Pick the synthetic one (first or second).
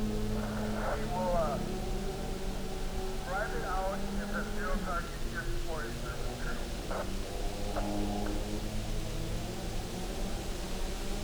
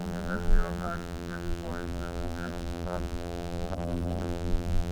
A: second